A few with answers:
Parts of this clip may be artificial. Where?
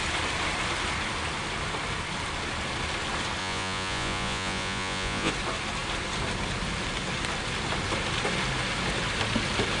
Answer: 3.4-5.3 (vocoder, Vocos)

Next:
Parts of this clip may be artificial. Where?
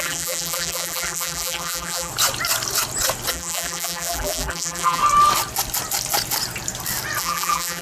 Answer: 0.0-2.1 (vocoder, BigVGAN v2); 3.3-5.0; 7.2-7.8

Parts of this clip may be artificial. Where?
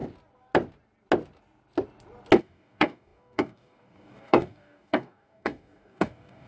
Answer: 2.4-6.5 (codec, DAC)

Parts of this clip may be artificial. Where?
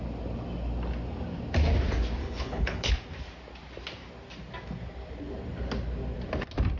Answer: 2.2-2.9 (codec, HILCodec)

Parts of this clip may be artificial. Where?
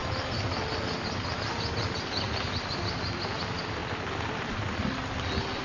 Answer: 2.5-3.8 (vocoder, BigVGAN v2)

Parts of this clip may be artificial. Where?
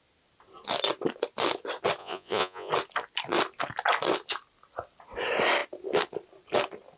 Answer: 2.0-2.7 (vocoder, Vocos)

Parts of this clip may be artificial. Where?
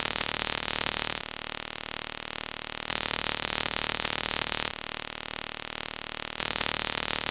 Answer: 0.0-1.2 (vocoder, Vocos); 2.9-4.7; 6.4-7.3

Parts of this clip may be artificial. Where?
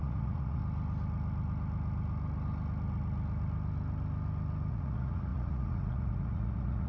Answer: 0.0-0.6 (vocoder, Vocos); 4.7-6.9